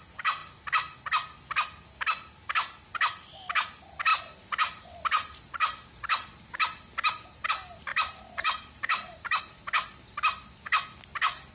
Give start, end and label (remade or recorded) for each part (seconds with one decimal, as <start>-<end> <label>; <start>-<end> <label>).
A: 0.0-7.9 recorded; 7.9-9.4 remade; 9.4-11.5 recorded